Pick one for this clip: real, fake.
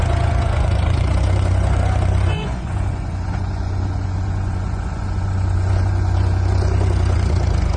fake